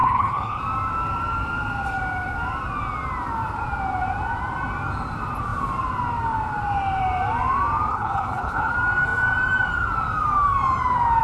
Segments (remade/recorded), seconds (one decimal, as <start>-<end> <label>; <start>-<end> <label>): 0.0-0.6 remade; 0.6-7.9 recorded; 7.9-8.7 remade; 8.7-11.2 recorded